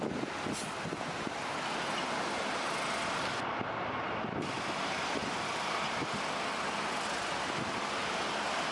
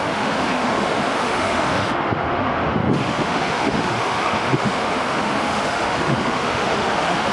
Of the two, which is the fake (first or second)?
second